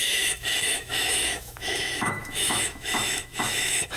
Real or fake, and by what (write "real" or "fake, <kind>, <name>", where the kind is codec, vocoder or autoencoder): fake, autoencoder, DAC-VAE